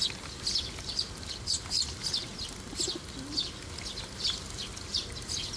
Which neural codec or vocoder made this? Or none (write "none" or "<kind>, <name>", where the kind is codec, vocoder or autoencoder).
none